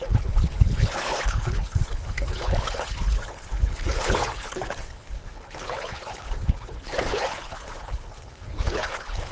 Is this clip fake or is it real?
fake